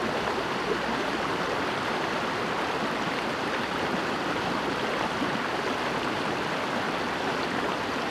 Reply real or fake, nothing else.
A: real